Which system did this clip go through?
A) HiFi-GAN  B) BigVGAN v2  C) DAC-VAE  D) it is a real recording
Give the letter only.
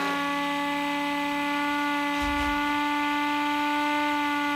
D